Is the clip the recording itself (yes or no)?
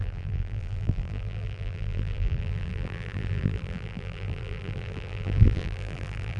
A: no